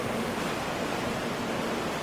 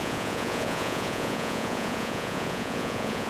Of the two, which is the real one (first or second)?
first